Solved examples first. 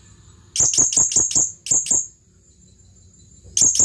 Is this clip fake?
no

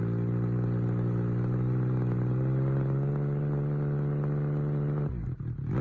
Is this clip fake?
no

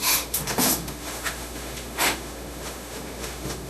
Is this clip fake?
yes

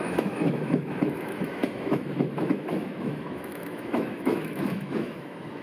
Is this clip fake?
yes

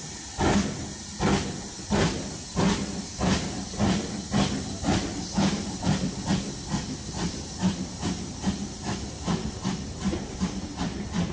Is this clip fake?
no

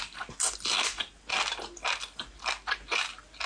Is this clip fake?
no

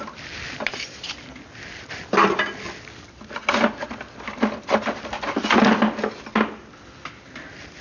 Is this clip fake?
no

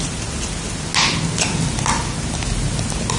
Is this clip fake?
no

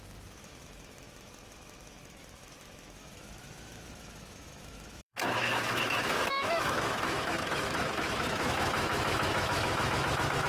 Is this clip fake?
yes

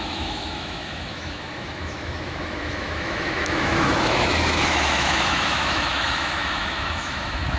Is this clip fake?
yes